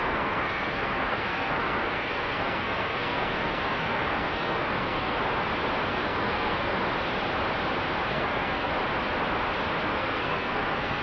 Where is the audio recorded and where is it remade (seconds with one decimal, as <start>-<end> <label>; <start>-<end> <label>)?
0.0-5.2 remade; 5.2-5.9 recorded; 5.9-6.8 remade; 6.8-8.1 recorded; 8.1-8.7 remade; 8.7-9.9 recorded; 9.9-11.0 remade